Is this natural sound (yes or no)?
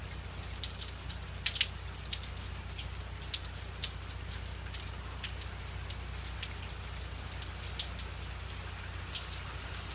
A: yes